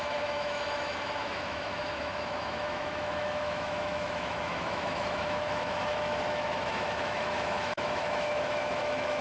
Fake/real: fake